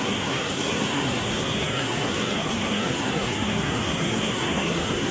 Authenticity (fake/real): fake